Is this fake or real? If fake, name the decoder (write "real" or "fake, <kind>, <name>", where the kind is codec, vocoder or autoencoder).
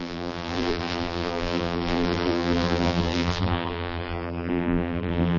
fake, vocoder, BigVGAN v2